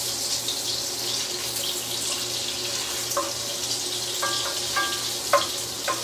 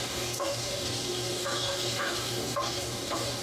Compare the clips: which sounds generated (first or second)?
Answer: second